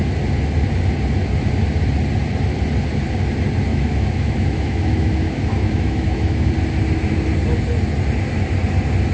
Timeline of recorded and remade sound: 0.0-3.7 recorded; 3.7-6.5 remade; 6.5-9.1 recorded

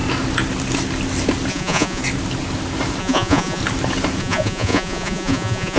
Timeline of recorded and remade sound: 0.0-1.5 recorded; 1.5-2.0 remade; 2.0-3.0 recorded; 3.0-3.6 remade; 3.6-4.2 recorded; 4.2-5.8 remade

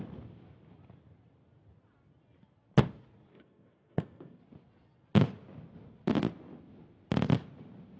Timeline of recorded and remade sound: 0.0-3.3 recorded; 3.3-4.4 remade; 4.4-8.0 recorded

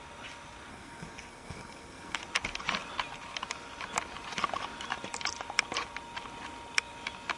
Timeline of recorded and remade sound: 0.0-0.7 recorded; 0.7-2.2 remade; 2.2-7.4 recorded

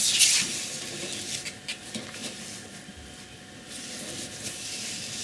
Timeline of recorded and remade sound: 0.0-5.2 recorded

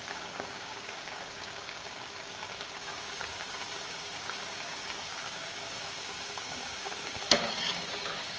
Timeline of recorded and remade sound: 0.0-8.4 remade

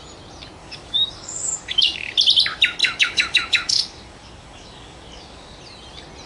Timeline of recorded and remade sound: 0.0-0.6 recorded; 0.6-2.1 remade; 2.1-2.8 recorded; 2.8-5.6 remade; 5.6-6.3 recorded

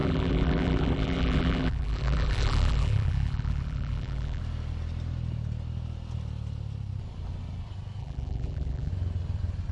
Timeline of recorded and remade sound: 0.0-4.4 remade; 4.4-8.0 recorded; 8.0-8.9 remade; 8.9-9.7 recorded